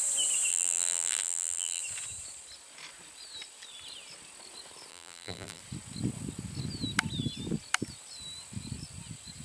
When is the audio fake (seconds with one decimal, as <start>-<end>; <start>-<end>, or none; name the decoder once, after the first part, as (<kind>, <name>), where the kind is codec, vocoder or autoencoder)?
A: 0.5-1.8 (vocoder, BigVGAN v2); 4.9-5.6